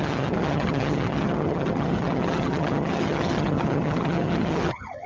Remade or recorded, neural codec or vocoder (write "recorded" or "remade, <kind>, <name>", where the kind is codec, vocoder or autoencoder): remade, vocoder, HiFi-GAN